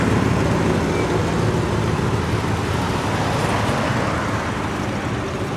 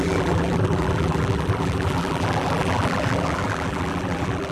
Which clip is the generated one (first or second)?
second